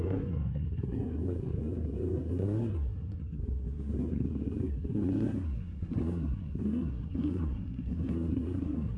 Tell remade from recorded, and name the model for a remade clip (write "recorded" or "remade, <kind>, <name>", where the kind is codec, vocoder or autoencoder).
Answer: remade, codec, SNAC